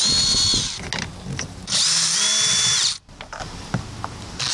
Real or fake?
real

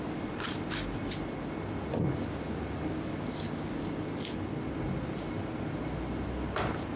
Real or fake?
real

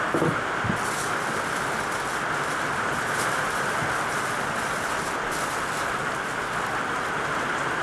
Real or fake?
real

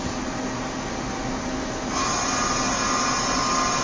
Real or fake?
real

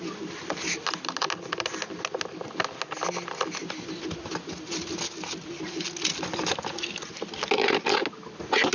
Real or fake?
real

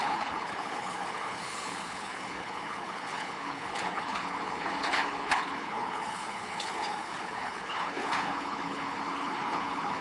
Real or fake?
fake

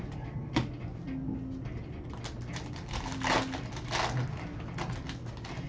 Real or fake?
real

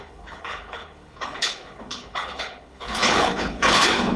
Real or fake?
fake